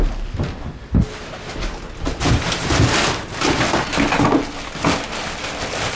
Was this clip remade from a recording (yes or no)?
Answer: no